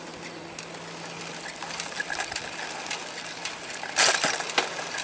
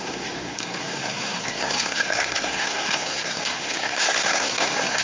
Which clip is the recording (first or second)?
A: first